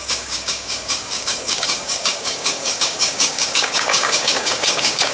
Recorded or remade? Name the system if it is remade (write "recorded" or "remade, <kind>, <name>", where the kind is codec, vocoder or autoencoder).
remade, codec, DAC